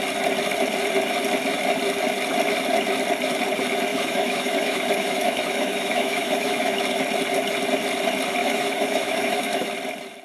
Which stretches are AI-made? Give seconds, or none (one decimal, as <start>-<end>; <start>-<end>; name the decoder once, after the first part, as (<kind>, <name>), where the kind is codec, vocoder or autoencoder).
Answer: 3.9-6.8 (autoencoder, DAC-VAE); 8.4-9.7